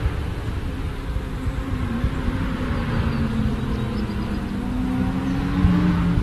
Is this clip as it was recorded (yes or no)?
yes